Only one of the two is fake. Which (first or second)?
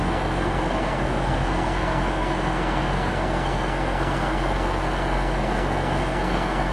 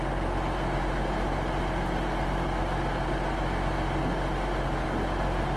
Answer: first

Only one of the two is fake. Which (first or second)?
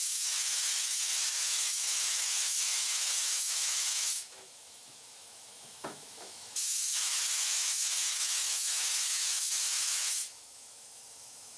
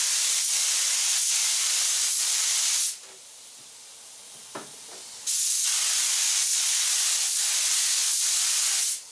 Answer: first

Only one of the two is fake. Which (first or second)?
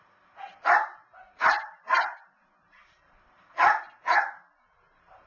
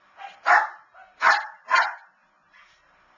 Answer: first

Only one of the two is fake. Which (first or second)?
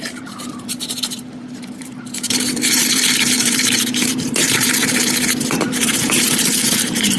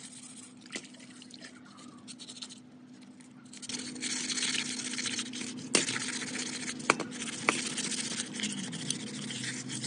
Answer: first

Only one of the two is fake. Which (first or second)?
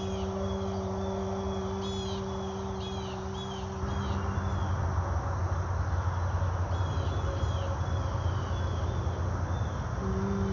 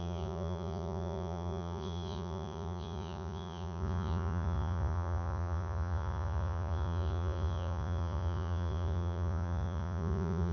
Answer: second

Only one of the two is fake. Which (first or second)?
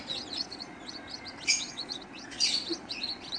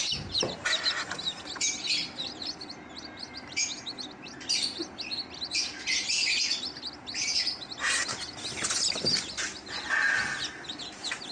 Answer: first